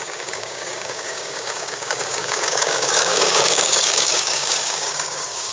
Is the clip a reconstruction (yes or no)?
yes